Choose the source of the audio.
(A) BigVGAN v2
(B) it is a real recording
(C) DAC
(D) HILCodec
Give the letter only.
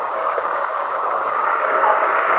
C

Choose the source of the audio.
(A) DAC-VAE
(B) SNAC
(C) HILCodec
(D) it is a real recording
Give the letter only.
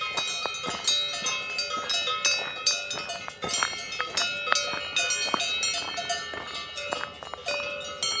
D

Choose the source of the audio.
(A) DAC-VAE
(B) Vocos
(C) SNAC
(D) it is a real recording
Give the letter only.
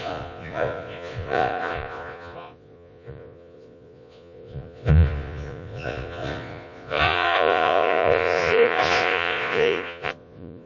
B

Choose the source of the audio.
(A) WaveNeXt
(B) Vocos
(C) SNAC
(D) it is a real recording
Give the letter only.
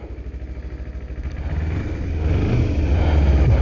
D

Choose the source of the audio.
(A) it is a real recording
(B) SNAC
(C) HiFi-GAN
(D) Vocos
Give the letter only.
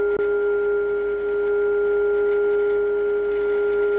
A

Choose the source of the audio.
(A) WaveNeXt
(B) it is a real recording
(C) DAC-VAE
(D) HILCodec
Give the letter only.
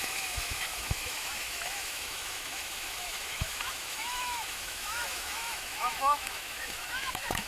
C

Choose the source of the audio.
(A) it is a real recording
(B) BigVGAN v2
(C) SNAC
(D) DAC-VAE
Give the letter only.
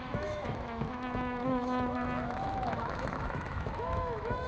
D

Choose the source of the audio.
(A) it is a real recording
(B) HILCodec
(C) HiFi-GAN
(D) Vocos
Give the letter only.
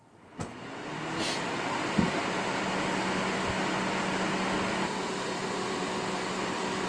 A